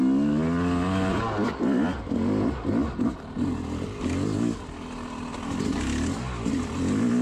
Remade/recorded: recorded